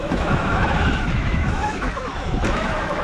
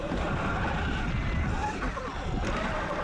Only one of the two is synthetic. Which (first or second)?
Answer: first